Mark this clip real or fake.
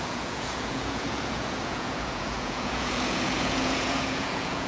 fake